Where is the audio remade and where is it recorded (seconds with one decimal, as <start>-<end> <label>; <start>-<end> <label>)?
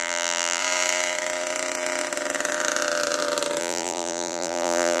0.0-0.6 remade; 0.6-3.6 recorded; 3.6-5.0 remade